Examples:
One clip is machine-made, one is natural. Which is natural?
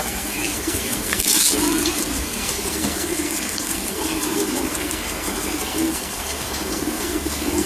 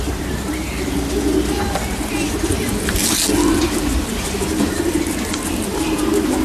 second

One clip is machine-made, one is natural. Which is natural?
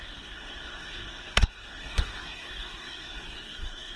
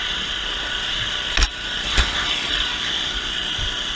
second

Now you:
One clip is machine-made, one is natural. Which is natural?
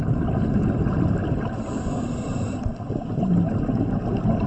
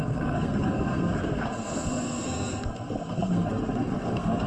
first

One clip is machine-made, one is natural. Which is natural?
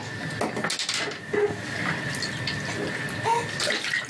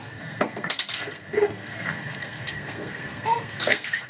first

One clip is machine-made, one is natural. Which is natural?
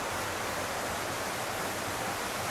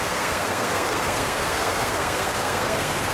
first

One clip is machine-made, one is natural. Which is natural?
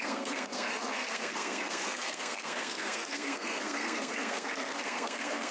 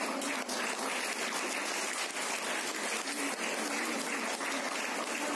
second